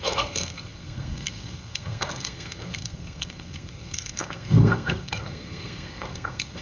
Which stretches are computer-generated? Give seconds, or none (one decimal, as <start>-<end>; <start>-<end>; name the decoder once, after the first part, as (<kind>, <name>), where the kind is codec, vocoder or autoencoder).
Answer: 0.0-6.6 (codec, SNAC)